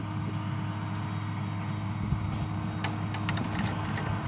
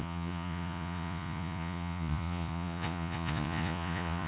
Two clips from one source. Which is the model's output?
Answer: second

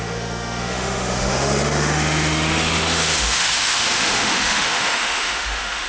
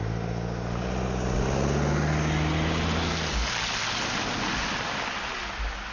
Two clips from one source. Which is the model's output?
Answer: first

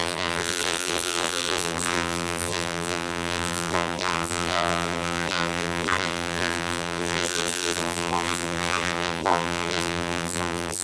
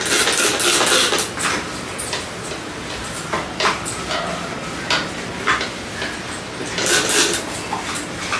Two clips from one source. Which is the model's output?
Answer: first